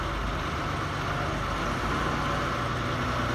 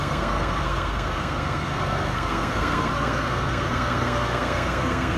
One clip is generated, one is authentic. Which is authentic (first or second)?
first